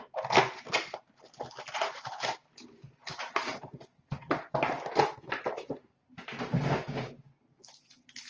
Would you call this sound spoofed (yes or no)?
no